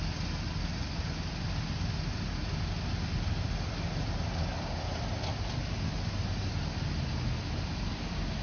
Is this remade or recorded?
recorded